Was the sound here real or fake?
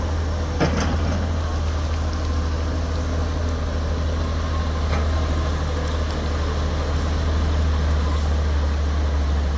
real